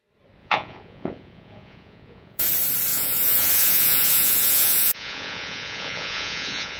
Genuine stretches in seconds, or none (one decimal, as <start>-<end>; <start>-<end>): 0.0-0.4; 2.5-2.9